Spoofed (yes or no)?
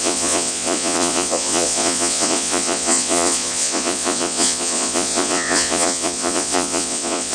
yes